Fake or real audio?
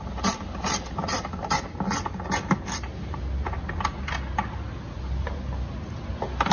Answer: real